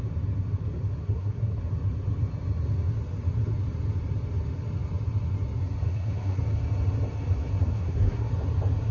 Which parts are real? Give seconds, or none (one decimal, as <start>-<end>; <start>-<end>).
0.0-1.0; 1.6-5.9; 6.4-7.6; 8.3-8.9